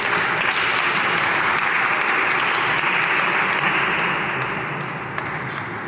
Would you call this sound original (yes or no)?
yes